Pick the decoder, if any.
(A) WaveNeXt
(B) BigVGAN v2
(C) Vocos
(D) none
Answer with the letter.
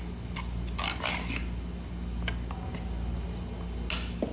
D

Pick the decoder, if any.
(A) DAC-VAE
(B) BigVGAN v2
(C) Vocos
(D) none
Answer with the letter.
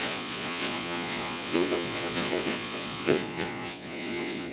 C